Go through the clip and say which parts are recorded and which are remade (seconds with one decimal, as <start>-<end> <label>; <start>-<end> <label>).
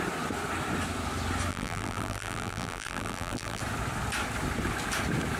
0.0-1.5 recorded; 1.5-3.6 remade; 3.6-5.4 recorded